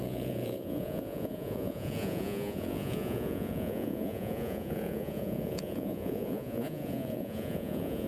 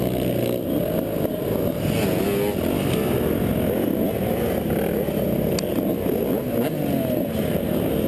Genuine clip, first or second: second